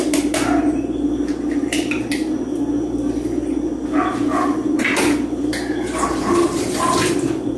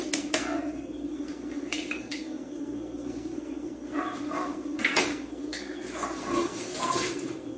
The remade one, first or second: second